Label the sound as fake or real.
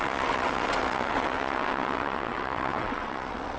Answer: fake